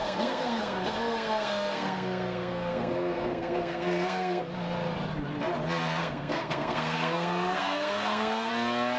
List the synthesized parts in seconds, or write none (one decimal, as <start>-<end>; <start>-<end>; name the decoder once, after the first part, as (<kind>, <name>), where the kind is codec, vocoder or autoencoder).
0.0-4.4 (codec, SNAC); 6.0-8.5